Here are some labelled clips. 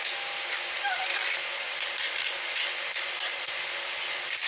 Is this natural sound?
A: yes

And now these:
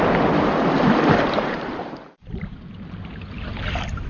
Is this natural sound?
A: yes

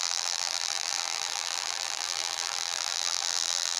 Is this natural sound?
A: no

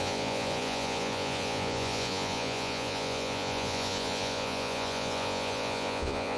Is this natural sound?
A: no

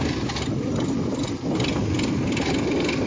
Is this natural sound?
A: yes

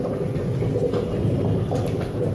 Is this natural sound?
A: yes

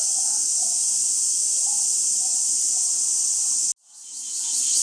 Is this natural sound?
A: yes